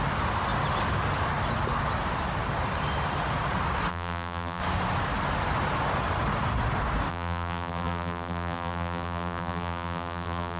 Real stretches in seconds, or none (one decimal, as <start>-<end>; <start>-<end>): 0.0-3.9; 4.6-7.1